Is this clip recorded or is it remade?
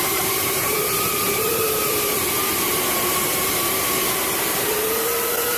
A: remade